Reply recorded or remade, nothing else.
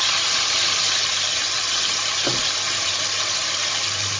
recorded